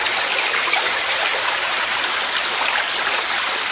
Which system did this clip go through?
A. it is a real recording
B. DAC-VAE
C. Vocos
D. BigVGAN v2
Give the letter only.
A